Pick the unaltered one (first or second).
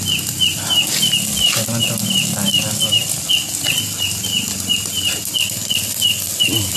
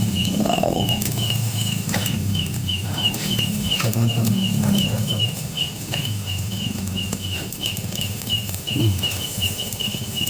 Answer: first